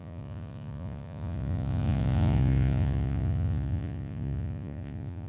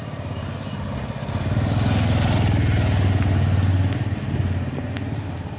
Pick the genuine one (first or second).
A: second